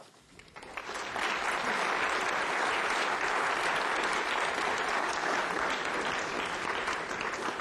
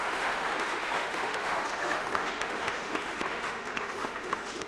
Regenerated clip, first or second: second